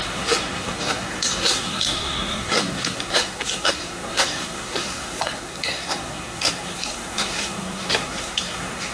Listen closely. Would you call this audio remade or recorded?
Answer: remade